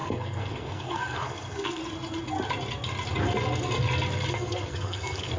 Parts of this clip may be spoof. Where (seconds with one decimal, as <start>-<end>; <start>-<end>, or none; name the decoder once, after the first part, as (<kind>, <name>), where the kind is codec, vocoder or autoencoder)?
0.0-1.8 (codec, SNAC); 4.3-5.4